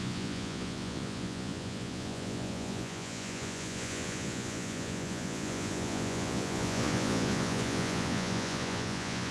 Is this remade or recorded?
remade